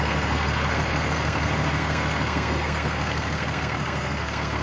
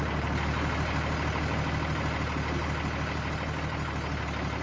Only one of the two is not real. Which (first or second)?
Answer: first